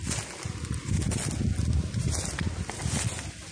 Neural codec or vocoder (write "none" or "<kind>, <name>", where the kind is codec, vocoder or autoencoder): none